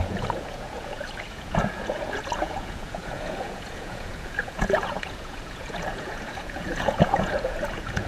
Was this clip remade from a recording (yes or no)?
yes